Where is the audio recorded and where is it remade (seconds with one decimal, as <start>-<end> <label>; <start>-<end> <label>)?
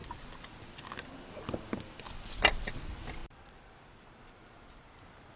0.0-1.7 remade; 1.7-3.2 recorded; 3.2-5.0 remade; 5.0-5.4 recorded